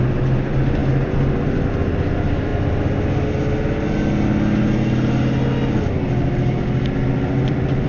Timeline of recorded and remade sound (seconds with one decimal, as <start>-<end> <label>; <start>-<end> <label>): 0.0-2.5 remade; 2.5-5.9 recorded; 5.9-7.9 remade